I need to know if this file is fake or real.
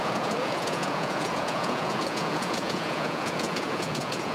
fake